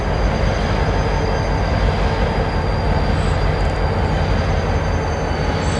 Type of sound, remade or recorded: recorded